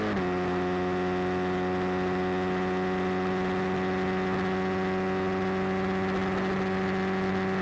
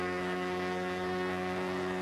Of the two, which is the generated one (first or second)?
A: second